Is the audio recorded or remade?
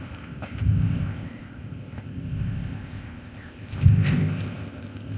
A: remade